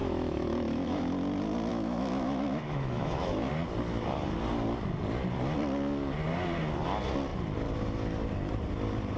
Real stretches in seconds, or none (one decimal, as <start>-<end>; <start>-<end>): 1.1-1.7; 3.5-9.2